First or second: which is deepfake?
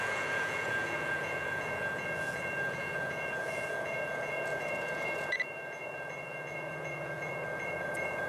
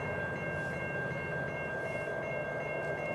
first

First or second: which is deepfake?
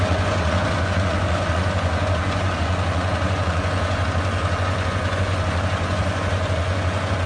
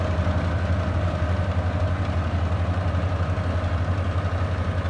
first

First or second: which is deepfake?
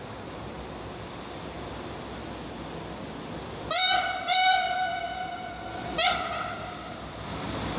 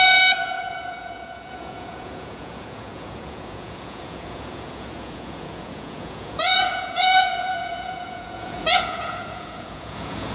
second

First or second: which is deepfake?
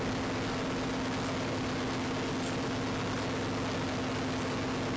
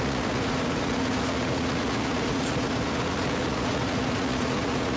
second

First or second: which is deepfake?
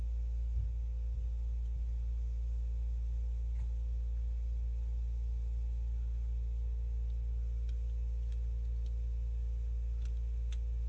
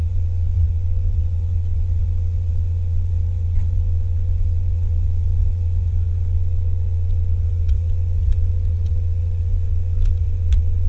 second